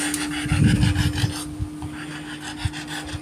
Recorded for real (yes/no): yes